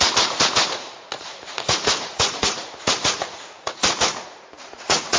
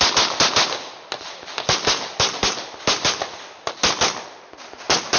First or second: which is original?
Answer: second